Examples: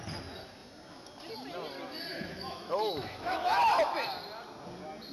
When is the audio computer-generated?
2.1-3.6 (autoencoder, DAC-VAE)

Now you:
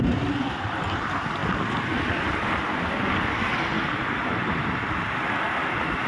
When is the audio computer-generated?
none

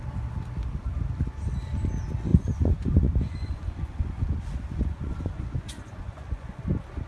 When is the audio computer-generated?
2.3-6.6 (vocoder, Vocos)

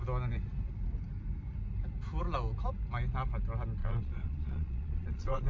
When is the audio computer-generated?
3.8-5.5 (vocoder, Vocos)

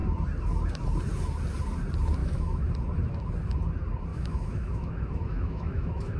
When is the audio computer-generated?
2.2-2.7 (autoencoder, DAC-VAE); 4.1-6.2

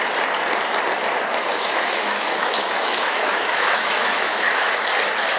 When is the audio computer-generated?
1.5-4.7 (autoencoder, DAC-VAE)

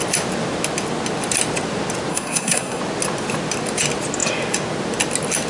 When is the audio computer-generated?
2.1-2.8 (codec, SNAC)